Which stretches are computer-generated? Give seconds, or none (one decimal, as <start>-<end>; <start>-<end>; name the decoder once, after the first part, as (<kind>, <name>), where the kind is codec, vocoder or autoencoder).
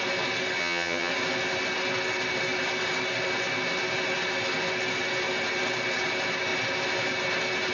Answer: 0.6-1.1 (vocoder, HiFi-GAN)